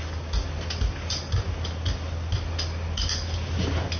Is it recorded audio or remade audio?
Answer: recorded